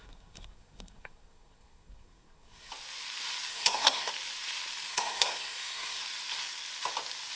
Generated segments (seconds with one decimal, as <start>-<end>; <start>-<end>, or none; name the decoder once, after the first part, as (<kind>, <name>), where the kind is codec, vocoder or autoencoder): 0.0-2.7 (codec, SNAC); 3.5-4.1; 4.9-6.0